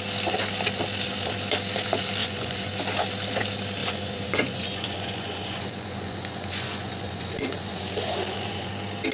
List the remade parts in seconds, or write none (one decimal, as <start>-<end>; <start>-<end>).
2.2-2.7; 3.8-8.7